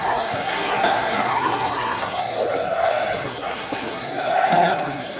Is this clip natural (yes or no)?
no